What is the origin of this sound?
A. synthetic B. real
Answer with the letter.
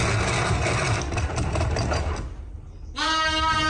B